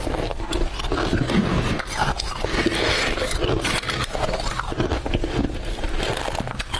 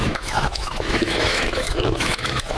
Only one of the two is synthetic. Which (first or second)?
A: second